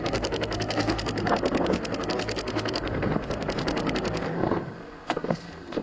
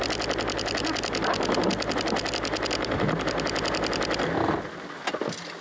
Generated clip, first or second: first